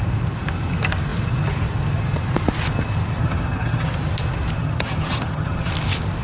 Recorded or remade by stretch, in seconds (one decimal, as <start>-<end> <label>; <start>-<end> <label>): 0.0-3.2 recorded; 3.2-3.9 remade; 3.9-4.6 recorded; 4.6-5.7 remade; 5.7-6.2 recorded